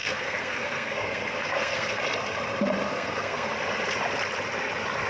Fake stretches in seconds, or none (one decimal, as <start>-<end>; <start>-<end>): 0.0-2.0; 2.9-3.5